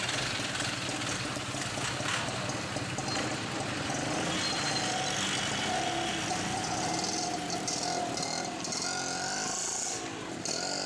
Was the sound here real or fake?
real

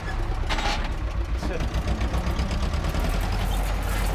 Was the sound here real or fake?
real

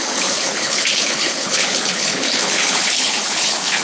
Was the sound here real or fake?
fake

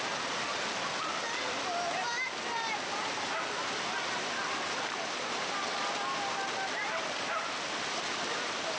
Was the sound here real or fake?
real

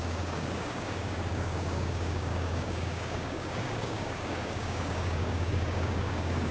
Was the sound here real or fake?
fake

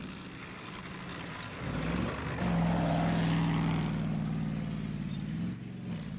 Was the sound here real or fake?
real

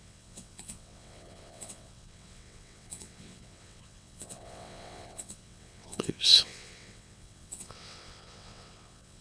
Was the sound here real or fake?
fake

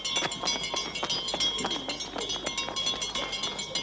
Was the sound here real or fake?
real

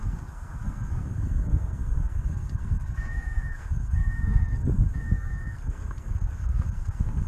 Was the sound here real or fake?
fake